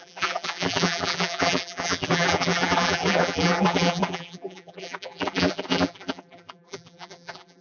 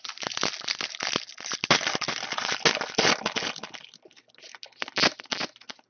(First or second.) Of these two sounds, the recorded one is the second